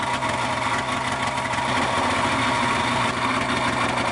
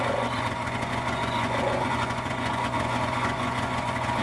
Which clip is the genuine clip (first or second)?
first